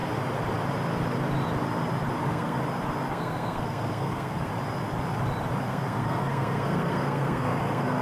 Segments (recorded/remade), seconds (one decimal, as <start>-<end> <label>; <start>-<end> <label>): 0.0-2.2 recorded; 2.2-2.6 remade; 2.6-3.1 recorded; 3.1-4.5 remade; 4.5-5.6 recorded; 5.6-8.0 remade